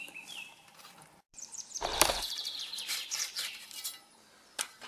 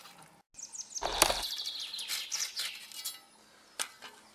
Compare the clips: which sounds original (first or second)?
second